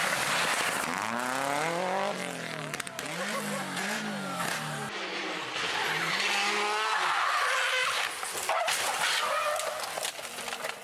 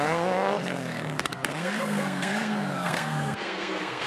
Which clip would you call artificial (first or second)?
second